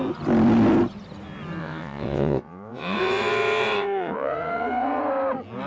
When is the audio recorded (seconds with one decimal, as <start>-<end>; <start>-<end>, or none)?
0.0-1.6; 5.0-5.7